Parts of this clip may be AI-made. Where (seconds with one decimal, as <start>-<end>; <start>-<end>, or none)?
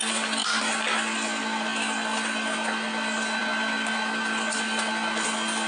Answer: none